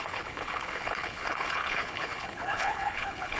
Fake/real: fake